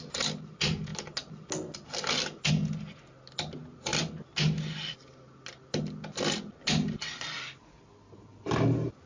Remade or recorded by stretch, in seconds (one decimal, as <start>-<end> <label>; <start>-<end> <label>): 0.0-9.1 recorded